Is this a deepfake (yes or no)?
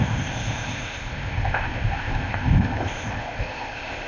yes